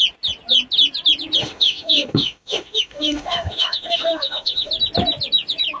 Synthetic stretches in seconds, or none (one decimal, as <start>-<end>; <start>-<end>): 1.4-4.7